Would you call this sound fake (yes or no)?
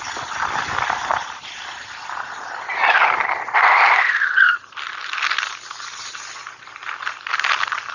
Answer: no